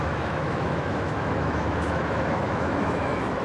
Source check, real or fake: fake